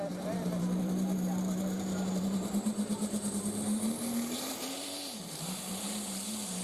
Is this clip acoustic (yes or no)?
no